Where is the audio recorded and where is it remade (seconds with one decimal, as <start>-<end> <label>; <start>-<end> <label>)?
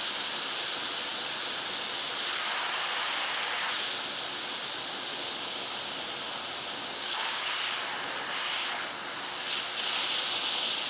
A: 0.0-6.8 recorded; 6.8-7.5 remade; 7.5-10.9 recorded